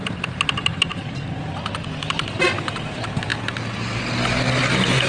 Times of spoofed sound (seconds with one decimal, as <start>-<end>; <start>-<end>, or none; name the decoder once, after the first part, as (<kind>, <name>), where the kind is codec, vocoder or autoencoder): none